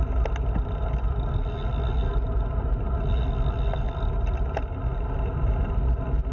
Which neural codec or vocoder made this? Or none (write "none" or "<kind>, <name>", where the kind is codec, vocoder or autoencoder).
none